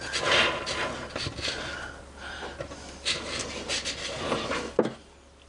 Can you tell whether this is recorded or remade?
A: recorded